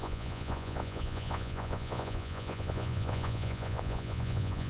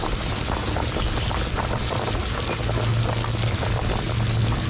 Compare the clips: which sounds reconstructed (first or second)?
first